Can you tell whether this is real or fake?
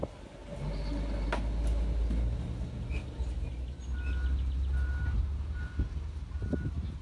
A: real